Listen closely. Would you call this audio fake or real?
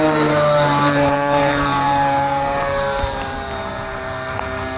fake